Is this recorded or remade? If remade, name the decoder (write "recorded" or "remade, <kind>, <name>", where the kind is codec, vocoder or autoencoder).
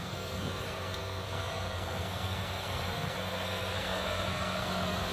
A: remade, codec, SNAC